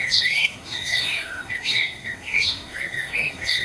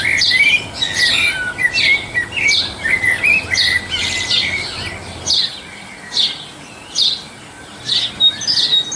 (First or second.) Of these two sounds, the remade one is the first